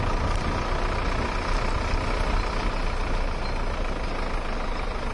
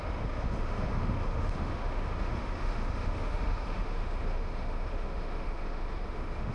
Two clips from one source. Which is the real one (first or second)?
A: first